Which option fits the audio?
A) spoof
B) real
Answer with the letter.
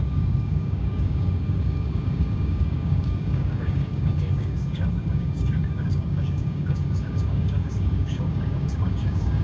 A